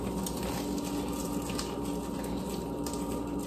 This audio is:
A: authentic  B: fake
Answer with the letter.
A